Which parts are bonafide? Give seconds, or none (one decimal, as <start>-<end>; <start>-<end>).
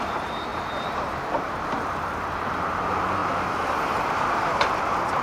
none